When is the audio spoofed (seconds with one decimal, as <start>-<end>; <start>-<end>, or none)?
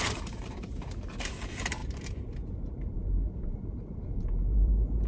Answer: 0.0-5.1